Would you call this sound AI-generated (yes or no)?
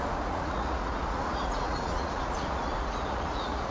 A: yes